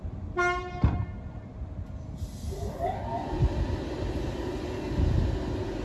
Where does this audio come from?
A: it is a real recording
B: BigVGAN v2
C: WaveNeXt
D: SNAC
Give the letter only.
A